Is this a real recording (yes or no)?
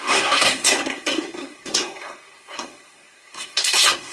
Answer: no